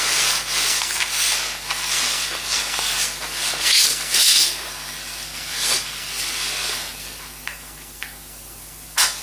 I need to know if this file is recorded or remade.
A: remade